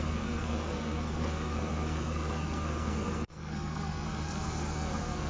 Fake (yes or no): yes